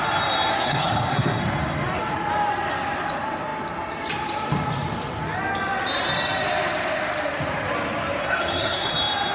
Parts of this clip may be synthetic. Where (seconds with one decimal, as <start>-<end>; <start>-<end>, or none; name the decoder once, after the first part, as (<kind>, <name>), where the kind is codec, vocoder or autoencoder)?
0.5-1.4 (codec, SNAC); 8.2-8.9